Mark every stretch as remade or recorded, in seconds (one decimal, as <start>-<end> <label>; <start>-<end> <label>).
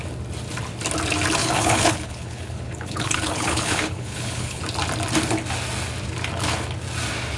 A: 0.0-1.4 recorded; 1.4-4.6 remade; 4.6-7.4 recorded